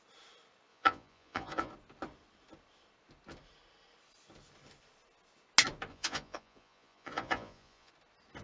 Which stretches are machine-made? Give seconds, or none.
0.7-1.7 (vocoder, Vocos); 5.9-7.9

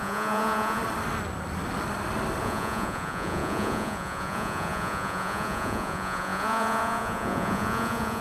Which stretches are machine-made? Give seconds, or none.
0.0-0.8 (vocoder, Vocos); 2.4-8.2

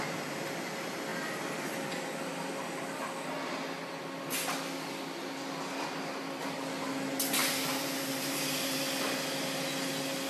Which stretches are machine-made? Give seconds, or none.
7.4-8.8 (vocoder, BigVGAN v2)

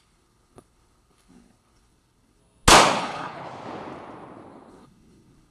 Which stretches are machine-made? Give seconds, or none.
0.0-2.4 (codec, HILCodec); 3.0-3.4; 4.7-5.5

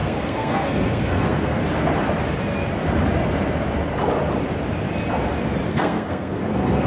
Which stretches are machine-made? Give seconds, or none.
0.0-1.6 (codec, SNAC); 5.7-6.9